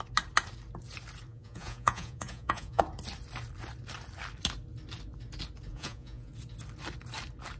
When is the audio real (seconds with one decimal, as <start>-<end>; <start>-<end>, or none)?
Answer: 0.0-1.3; 2.8-5.7; 6.3-7.6